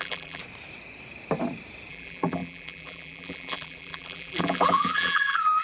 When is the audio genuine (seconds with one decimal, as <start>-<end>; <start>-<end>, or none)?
0.4-1.9